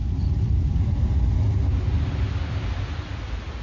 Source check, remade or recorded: recorded